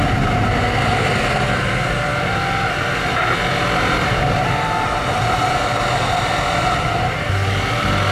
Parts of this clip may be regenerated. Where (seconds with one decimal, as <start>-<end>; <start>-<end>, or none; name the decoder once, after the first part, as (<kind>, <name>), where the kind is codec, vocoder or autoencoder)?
none